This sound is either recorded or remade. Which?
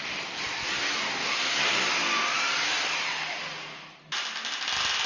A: recorded